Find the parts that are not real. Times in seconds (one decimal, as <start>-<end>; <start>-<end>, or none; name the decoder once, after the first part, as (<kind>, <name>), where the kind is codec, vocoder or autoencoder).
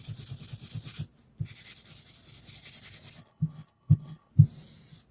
3.2-4.3 (codec, HILCodec)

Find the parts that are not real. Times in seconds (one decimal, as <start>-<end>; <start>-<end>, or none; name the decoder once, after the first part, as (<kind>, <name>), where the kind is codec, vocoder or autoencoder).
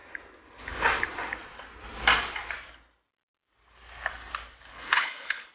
4.7-5.5 (codec, HILCodec)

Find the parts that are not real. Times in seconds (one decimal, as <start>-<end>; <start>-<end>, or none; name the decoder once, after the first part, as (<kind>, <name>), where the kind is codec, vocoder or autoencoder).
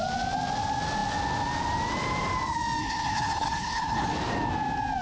2.8-4.1 (codec, HILCodec)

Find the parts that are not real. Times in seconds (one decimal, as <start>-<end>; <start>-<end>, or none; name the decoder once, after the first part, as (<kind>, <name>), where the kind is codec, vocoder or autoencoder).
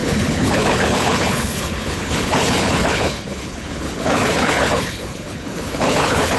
0.0-6.4 (codec, HILCodec)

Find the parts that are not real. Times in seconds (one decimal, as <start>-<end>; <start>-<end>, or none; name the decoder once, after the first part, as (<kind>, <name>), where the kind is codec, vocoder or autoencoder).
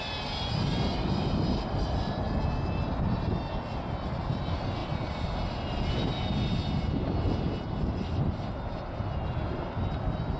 none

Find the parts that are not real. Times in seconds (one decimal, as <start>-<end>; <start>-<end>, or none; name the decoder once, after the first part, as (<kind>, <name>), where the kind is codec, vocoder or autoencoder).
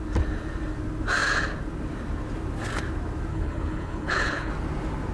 3.3-4.5 (codec, HILCodec)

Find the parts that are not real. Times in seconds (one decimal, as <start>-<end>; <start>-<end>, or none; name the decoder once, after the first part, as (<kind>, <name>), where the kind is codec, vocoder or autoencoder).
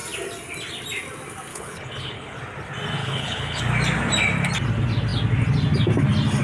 1.5-2.4 (codec, HILCodec); 3.0-3.6